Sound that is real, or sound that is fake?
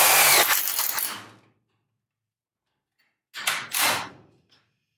real